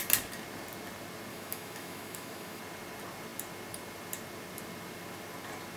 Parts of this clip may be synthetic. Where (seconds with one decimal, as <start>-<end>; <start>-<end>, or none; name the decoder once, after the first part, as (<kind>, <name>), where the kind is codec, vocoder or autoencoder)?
1.3-2.6 (autoencoder, DAC-VAE)